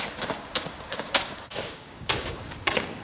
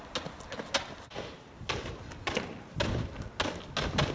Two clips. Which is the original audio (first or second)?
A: second